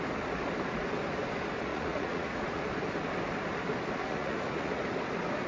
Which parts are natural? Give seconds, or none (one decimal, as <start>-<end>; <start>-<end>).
0.0-1.7; 2.6-4.0; 4.8-5.5